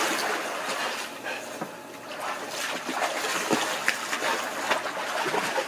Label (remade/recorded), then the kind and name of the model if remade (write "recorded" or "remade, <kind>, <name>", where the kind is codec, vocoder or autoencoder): recorded